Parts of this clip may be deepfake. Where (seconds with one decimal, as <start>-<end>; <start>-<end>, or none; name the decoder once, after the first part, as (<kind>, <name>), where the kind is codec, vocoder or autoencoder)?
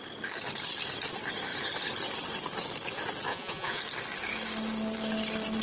3.3-3.8 (vocoder, Vocos)